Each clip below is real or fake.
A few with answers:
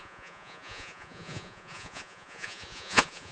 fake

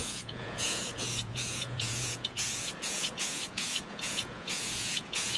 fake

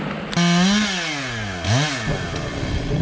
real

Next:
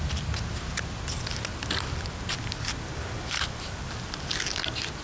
real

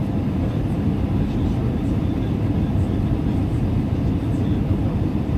real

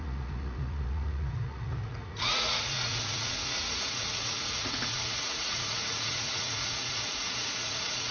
fake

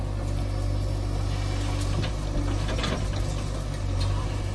real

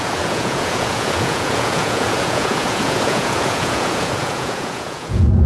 fake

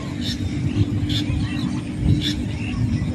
real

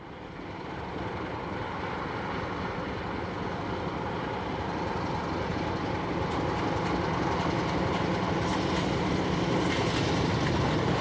real